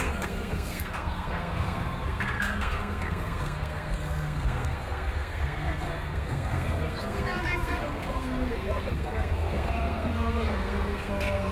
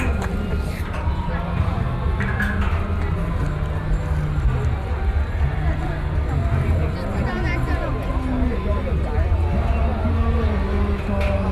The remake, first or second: first